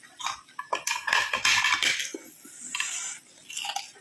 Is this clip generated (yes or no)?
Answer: no